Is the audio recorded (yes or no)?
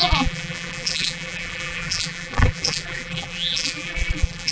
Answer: no